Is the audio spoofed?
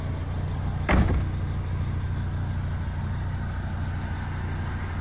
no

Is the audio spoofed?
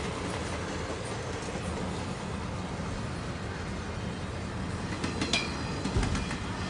no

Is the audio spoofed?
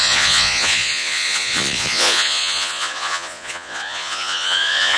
yes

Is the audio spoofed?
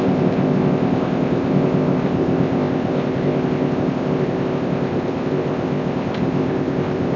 yes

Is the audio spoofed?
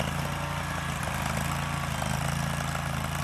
no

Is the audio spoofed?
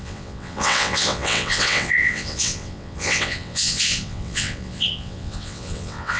yes